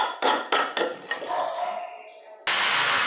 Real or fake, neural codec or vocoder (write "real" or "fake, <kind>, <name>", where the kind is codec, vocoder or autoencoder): real